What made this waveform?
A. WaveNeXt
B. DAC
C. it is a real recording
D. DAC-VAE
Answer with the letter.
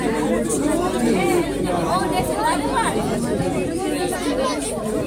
C